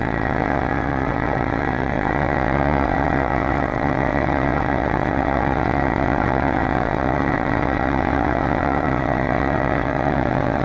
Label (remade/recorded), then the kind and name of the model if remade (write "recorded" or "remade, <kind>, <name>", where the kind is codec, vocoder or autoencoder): remade, vocoder, WaveNeXt